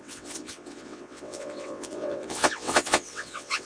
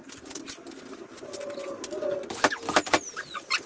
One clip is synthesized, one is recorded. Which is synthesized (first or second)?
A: first